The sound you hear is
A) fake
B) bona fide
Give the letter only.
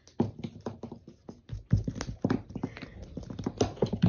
B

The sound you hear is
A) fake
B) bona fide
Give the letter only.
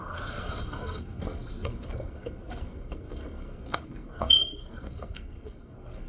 A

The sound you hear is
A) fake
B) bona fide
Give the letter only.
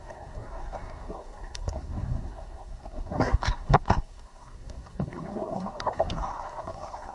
A